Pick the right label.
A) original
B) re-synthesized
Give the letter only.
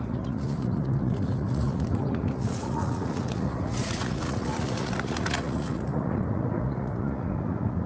B